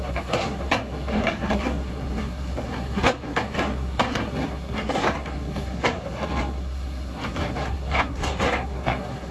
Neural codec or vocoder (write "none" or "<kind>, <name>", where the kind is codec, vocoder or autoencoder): codec, SNAC